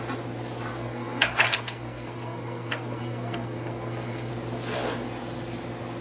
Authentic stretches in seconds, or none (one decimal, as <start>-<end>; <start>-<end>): 0.0-0.7; 4.3-6.0